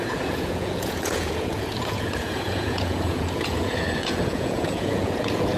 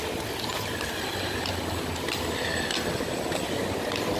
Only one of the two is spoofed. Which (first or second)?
first